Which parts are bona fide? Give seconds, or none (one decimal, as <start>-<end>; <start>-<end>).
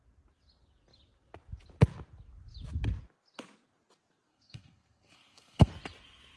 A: 0.0-4.3; 5.7-6.4